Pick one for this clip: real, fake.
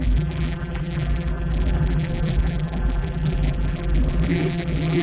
fake